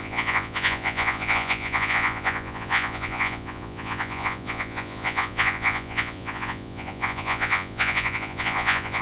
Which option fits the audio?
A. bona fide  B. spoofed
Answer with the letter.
B